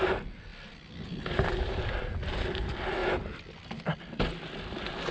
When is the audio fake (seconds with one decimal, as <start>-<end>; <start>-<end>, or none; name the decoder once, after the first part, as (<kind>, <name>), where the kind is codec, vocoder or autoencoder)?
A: none